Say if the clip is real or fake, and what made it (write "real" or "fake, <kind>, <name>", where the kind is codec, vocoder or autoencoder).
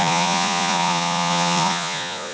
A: fake, vocoder, Vocos